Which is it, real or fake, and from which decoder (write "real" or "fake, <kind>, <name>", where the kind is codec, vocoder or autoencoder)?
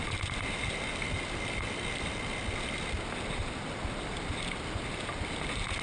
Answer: real